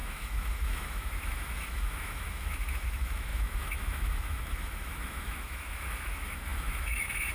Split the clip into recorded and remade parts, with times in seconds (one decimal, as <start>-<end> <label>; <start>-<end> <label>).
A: 0.0-7.3 remade